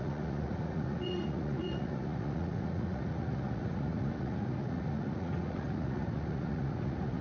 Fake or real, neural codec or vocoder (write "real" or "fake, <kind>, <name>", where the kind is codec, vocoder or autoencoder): fake, vocoder, Vocos